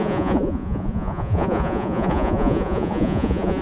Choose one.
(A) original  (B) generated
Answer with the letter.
B